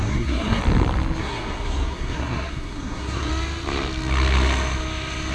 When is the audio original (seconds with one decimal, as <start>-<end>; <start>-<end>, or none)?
0.6-1.2; 3.3-5.3